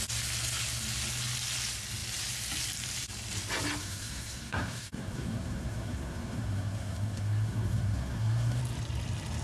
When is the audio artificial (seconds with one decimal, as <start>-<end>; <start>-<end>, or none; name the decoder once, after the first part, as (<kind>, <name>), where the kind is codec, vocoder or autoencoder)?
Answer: 3.8-8.6 (codec, SNAC)